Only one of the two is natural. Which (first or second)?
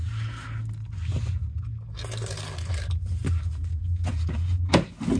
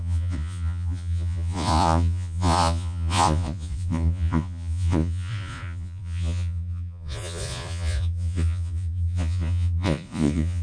first